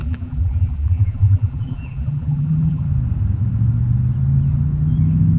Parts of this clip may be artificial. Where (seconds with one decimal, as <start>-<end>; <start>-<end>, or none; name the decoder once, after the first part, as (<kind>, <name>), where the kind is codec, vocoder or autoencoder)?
0.0-2.8 (vocoder, BigVGAN v2)

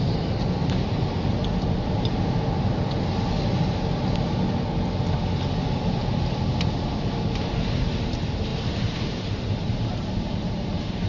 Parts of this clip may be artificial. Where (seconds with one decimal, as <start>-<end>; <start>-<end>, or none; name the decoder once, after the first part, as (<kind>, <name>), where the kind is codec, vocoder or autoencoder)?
8.5-11.1 (vocoder, BigVGAN v2)

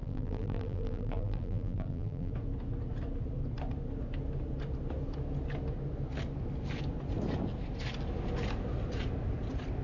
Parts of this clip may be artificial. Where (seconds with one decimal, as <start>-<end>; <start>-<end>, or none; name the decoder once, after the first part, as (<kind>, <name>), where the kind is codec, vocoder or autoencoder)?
0.0-2.3 (vocoder, BigVGAN v2)